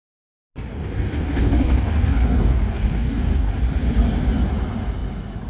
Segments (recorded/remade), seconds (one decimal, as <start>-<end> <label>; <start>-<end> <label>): 0.0-0.7 recorded; 0.7-3.5 remade; 3.5-5.5 recorded